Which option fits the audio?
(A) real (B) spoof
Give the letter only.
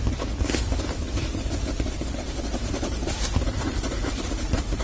B